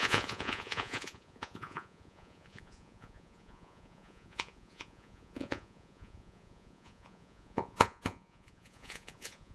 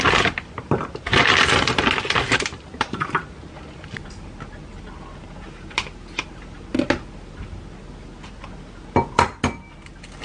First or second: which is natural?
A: second